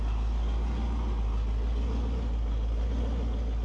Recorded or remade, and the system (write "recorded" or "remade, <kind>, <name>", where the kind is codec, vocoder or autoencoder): recorded